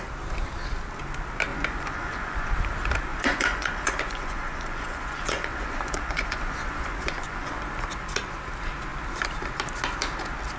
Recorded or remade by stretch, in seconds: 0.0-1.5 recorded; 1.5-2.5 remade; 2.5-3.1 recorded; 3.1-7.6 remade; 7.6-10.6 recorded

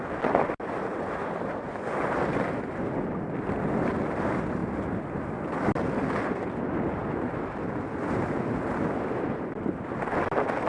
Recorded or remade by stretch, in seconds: 0.0-10.7 recorded

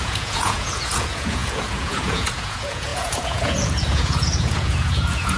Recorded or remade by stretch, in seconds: 0.0-5.4 remade

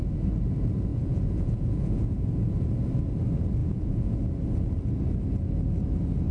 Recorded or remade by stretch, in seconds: 0.0-0.9 recorded; 0.9-2.5 remade; 2.5-3.6 recorded; 3.6-4.2 remade; 4.2-6.3 recorded

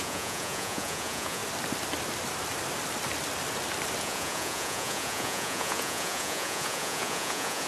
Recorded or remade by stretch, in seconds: 0.0-1.4 remade; 1.4-4.0 recorded; 4.0-7.7 remade